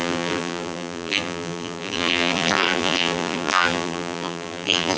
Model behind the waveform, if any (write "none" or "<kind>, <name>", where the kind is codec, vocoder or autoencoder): vocoder, BigVGAN v2